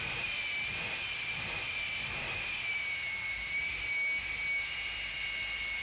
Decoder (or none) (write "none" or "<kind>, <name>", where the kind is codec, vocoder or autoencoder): none